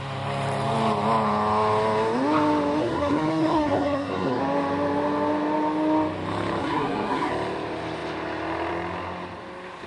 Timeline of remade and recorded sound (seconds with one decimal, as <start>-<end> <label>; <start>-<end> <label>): 0.0-2.8 recorded; 2.8-4.4 remade; 4.4-6.6 recorded; 6.6-7.3 remade; 7.3-9.9 recorded